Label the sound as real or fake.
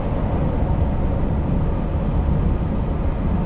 real